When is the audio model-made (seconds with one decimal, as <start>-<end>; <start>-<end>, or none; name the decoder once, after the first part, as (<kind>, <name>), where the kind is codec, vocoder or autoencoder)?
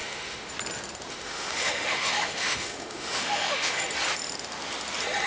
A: 0.0-0.5 (autoencoder, DAC-VAE); 1.1-3.8